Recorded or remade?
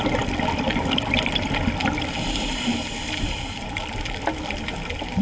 recorded